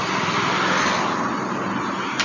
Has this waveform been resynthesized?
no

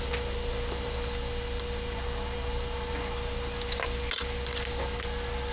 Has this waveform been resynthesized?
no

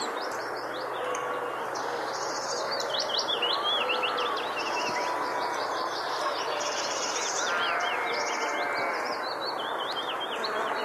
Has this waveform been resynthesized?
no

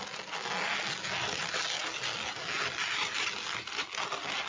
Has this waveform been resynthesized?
no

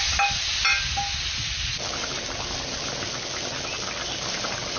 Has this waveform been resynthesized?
no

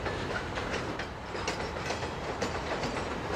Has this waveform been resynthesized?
yes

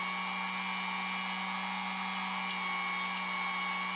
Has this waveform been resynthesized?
no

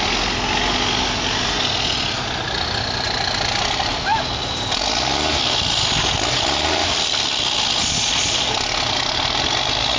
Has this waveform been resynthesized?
no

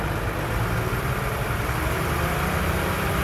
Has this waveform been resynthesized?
yes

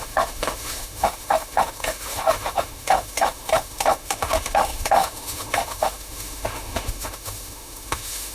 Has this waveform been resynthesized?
yes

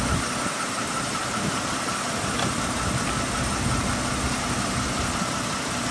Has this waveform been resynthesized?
yes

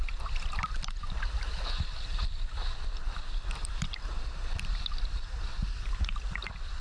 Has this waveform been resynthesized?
no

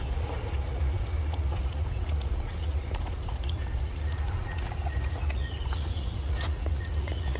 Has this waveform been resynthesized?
yes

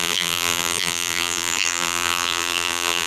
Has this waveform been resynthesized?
yes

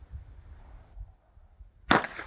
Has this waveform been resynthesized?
no